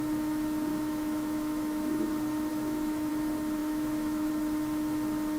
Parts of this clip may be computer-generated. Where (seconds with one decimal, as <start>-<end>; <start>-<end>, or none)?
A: 0.7-2.1; 2.5-3.1; 3.6-4.3